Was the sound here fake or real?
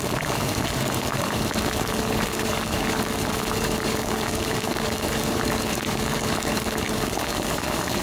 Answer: fake